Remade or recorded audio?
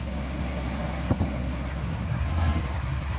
remade